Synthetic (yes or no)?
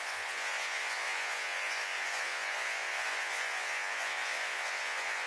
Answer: yes